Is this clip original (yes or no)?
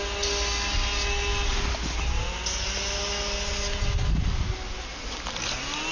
yes